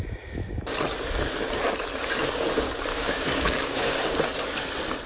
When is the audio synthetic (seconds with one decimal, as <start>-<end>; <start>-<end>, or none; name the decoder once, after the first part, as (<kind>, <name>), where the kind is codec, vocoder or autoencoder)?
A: 2.9-4.2 (codec, DAC)